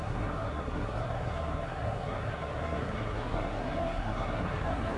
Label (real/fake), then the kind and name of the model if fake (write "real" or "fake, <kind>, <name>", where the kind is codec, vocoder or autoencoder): fake, codec, SNAC